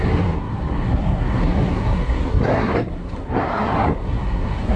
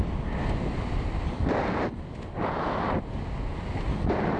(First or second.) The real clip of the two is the second